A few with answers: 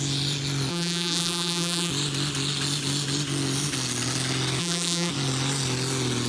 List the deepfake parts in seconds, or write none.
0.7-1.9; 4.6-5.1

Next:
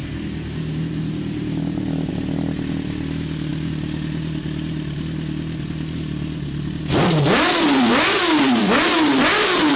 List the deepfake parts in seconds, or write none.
none

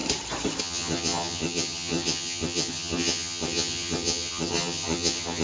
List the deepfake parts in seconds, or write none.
0.6-5.4

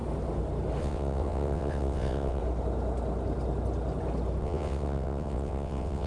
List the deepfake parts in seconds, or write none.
0.8-2.4; 4.4-6.1

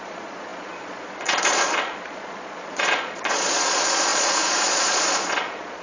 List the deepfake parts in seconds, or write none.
0.0-5.8

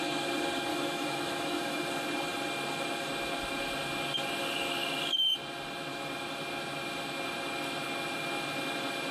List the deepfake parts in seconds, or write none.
0.7-1.9